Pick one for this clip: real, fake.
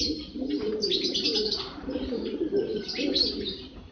fake